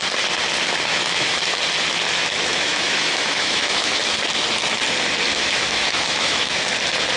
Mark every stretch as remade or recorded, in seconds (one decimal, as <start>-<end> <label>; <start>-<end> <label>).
0.0-0.9 recorded; 0.9-1.6 remade; 1.6-2.5 recorded; 2.5-4.0 remade; 4.0-5.3 recorded; 5.3-6.7 remade; 6.7-7.2 recorded